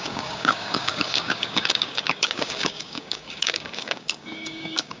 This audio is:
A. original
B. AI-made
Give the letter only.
B